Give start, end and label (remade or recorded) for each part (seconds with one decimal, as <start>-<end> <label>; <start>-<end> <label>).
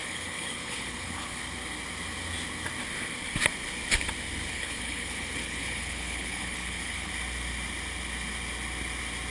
0.0-1.4 remade; 1.4-4.5 recorded; 4.5-7.1 remade; 7.1-9.3 recorded